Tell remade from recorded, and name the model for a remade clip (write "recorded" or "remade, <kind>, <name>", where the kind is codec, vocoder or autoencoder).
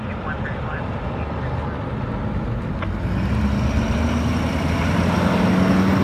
recorded